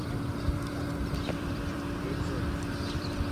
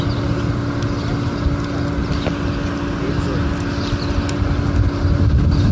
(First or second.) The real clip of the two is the second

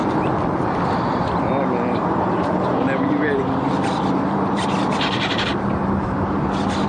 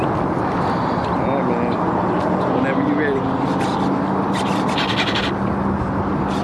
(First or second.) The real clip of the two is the second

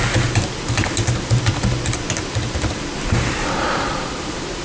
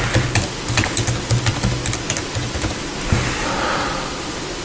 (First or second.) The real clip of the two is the second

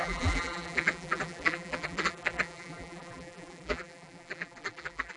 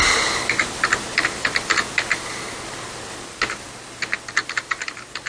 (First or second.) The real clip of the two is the second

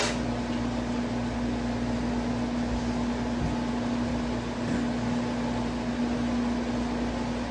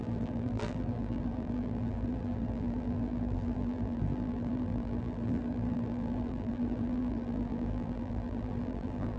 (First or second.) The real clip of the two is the first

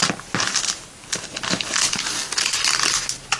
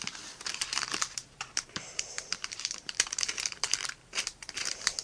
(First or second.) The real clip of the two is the first